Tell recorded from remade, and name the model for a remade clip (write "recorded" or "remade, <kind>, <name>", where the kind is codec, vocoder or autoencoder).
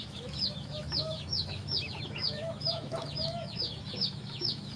remade, autoencoder, DAC-VAE